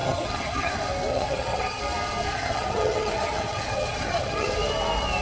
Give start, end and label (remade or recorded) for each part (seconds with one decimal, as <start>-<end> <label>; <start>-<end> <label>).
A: 0.0-0.7 remade; 0.7-1.1 recorded; 1.1-1.8 remade; 1.8-2.3 recorded; 2.3-4.5 remade; 4.5-5.2 recorded

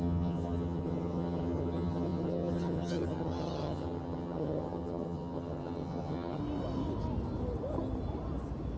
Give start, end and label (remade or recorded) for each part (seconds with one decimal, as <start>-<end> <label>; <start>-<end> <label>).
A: 0.0-6.4 remade; 6.4-8.8 recorded

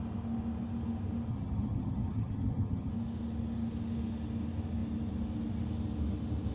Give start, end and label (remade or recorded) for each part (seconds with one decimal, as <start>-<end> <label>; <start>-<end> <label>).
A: 0.0-1.3 recorded; 1.3-2.9 remade; 2.9-6.5 recorded